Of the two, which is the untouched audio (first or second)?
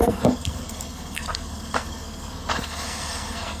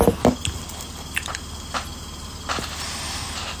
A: second